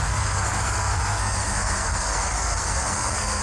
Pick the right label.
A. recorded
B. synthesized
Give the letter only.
B